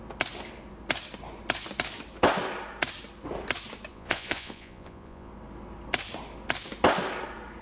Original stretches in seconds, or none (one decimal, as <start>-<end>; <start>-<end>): 0.0-3.9; 5.3-7.6